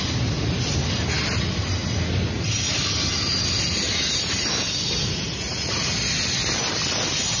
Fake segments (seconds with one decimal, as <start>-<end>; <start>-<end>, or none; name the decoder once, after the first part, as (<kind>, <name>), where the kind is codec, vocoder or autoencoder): none

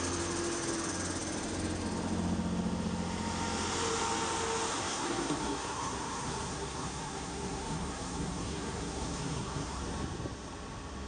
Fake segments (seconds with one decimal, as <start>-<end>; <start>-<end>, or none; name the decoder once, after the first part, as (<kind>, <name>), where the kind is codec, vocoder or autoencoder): 4.7-9.8 (codec, SNAC)

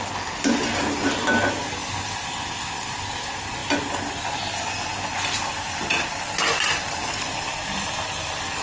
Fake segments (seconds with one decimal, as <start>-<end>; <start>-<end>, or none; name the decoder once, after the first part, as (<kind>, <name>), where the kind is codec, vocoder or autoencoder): none

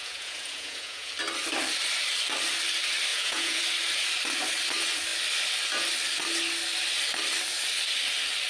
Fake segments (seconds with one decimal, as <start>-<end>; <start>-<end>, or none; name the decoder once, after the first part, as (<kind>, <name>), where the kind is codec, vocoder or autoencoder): 0.0-1.1 (vocoder, Vocos); 3.1-3.6

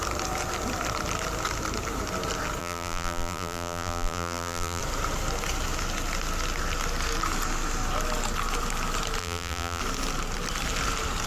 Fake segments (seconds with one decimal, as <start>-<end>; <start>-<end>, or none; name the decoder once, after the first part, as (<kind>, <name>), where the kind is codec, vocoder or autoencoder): 2.6-4.8 (vocoder, BigVGAN v2); 9.2-9.8

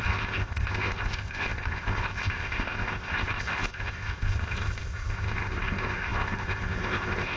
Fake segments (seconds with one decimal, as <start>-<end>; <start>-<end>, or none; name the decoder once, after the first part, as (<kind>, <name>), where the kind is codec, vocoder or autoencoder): 0.0-7.4 (codec, ZipCodec)